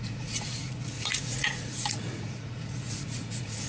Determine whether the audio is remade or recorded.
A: remade